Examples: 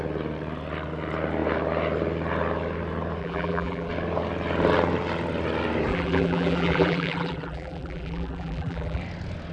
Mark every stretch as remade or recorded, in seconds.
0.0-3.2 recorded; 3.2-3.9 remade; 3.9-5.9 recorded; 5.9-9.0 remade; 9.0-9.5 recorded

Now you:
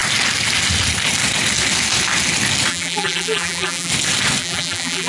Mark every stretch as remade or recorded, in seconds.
0.0-2.7 recorded; 2.7-3.9 remade; 3.9-4.4 recorded; 4.4-5.1 remade

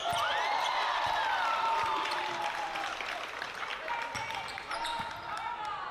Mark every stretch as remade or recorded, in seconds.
0.0-3.7 remade; 3.7-5.9 recorded